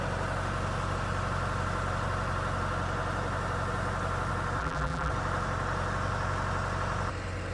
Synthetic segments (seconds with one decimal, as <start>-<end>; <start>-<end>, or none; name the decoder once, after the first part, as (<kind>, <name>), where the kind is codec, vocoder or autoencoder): 4.6-5.1 (vocoder, BigVGAN v2)